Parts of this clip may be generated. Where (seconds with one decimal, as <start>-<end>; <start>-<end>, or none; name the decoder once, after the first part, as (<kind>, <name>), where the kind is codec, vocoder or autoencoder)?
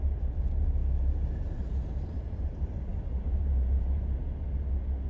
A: 0.0-4.2 (vocoder, BigVGAN v2)